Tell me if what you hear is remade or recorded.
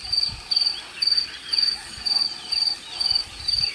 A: recorded